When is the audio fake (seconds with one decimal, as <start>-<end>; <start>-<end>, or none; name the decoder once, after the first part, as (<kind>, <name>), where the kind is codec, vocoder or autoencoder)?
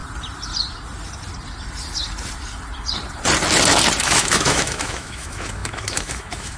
4.0-6.6 (autoencoder, DAC-VAE)